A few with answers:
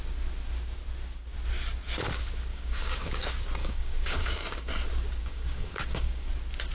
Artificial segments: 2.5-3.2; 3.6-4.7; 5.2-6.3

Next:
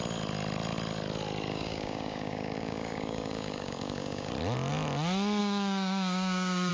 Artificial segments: 1.5-4.3; 5.4-6.7

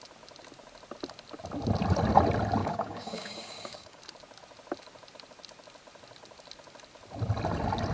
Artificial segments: 2.6-4.0

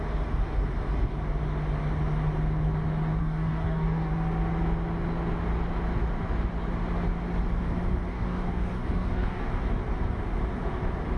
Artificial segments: 3.2-4.1; 8.1-9.5

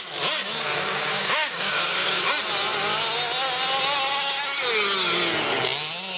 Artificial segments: 0.9-2.2

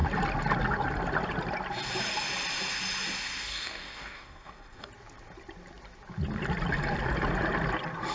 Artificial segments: 3.5-4.9

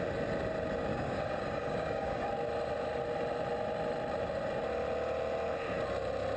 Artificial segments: 0.9-2.3